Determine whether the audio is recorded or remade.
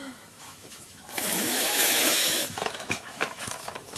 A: remade